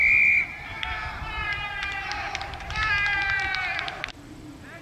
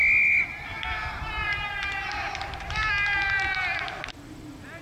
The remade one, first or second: first